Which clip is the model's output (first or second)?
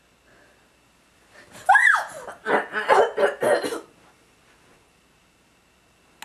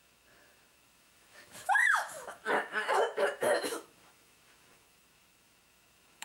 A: second